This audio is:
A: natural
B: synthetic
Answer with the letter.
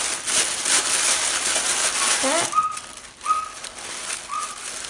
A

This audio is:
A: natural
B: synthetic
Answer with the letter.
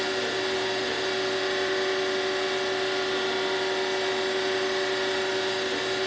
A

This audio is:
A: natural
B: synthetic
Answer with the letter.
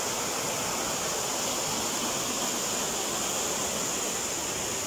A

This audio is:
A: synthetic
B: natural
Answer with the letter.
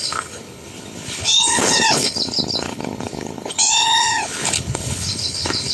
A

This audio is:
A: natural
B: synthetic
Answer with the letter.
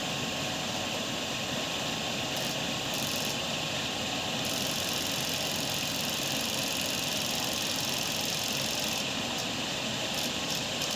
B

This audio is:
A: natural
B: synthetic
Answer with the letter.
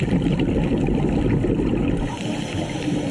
A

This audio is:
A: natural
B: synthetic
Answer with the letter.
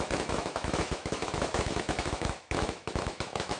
B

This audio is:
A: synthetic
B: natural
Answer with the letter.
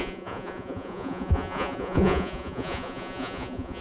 A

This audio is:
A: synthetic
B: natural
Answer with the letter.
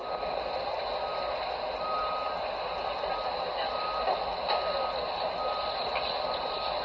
B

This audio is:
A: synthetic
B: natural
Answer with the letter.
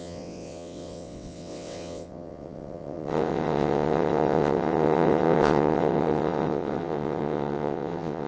A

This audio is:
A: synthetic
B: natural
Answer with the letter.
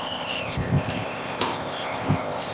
A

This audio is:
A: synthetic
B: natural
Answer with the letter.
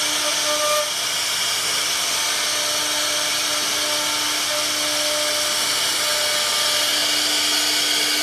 B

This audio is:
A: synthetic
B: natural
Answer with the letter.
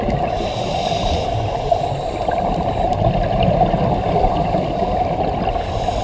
B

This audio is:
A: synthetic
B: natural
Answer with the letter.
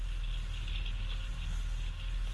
B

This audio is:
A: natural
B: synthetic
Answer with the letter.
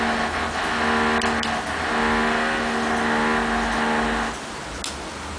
A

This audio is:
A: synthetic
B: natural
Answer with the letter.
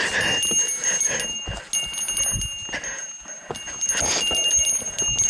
B